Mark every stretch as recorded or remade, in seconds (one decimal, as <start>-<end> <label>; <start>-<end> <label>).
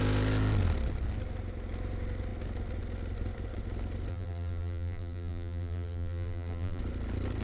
0.0-4.1 recorded; 4.1-6.8 remade; 6.8-7.4 recorded